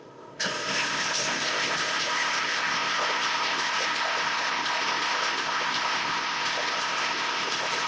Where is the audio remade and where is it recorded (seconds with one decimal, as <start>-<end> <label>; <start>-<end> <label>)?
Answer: 0.0-7.9 remade